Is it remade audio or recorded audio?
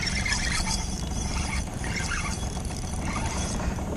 remade